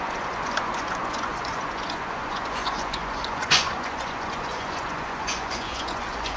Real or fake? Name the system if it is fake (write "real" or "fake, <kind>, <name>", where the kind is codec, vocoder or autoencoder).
fake, vocoder, Vocos